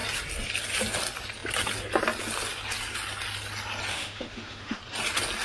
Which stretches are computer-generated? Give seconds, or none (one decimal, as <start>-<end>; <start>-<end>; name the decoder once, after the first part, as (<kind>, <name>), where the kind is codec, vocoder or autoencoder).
3.9-4.8 (autoencoder, DAC-VAE)

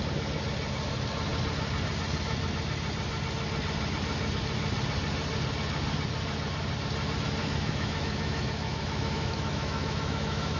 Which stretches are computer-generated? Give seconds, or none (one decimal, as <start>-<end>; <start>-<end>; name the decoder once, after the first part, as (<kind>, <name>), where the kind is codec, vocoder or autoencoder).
7.4-10.6 (autoencoder, DAC-VAE)